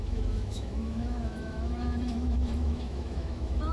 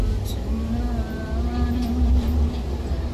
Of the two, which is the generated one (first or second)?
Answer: first